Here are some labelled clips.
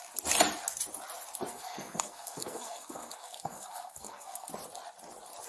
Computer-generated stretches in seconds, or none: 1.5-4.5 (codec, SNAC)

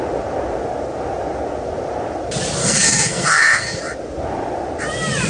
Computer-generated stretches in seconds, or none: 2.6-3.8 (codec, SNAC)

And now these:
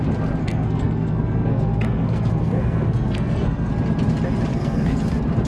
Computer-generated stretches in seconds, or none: 0.4-3.7 (codec, SNAC); 4.5-5.0